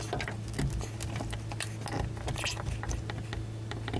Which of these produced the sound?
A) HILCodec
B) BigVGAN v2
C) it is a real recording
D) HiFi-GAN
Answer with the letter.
C